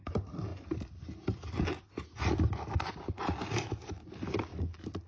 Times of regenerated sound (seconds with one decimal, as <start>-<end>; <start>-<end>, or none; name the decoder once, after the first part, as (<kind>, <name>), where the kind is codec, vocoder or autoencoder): none